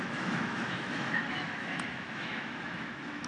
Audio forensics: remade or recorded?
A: remade